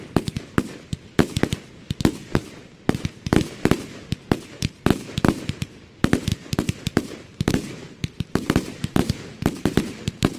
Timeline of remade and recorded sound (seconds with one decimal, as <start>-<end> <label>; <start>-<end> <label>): 0.0-6.3 recorded; 6.3-10.4 remade